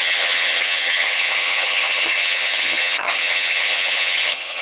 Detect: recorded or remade remade